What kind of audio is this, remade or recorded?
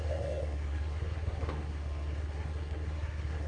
remade